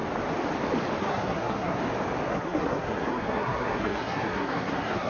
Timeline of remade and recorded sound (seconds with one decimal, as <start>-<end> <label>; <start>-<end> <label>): 0.0-1.0 recorded; 1.0-1.8 remade; 1.8-2.3 recorded; 2.3-5.1 remade